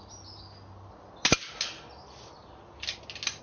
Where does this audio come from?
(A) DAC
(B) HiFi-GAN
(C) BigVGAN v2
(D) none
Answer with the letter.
D